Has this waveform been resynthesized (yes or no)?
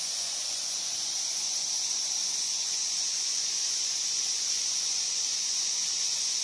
yes